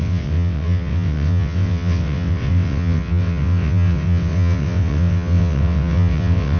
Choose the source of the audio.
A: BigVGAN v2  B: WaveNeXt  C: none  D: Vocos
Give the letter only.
B